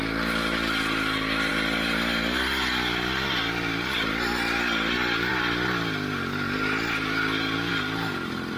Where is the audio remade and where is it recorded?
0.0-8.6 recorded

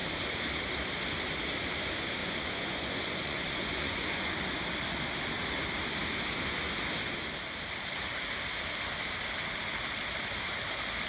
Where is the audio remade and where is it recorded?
0.0-2.2 recorded; 2.2-4.3 remade; 4.3-11.1 recorded

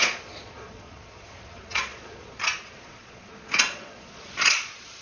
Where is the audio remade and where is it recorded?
0.0-5.0 remade

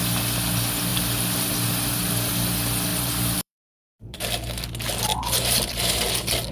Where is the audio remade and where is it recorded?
0.0-0.9 recorded; 0.9-1.5 remade; 1.5-2.9 recorded; 2.9-4.2 remade; 4.2-5.1 recorded; 5.1-5.7 remade; 5.7-6.5 recorded

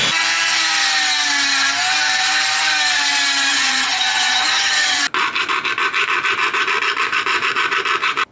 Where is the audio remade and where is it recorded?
0.0-3.5 recorded; 3.5-5.0 remade; 5.0-8.3 recorded

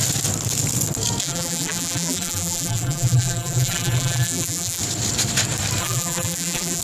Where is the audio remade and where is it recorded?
0.0-1.2 recorded; 1.2-4.8 remade; 4.8-5.8 recorded; 5.8-6.8 remade

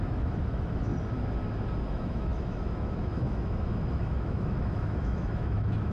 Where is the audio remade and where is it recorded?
0.0-0.9 remade; 0.9-1.9 recorded; 1.9-5.9 remade

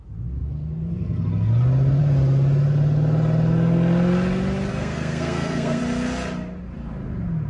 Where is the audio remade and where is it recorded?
0.0-4.7 recorded; 4.7-5.8 remade; 5.8-7.5 recorded